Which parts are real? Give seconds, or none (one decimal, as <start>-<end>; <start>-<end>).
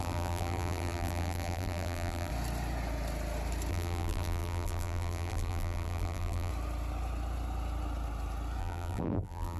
2.3-3.7; 6.5-8.6